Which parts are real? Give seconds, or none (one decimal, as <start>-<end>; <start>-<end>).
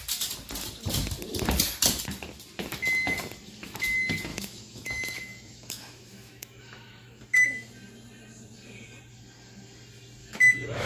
0.0-4.3; 7.2-10.2